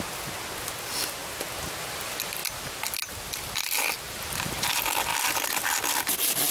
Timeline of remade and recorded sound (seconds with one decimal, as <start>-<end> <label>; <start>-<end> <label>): 0.0-6.5 recorded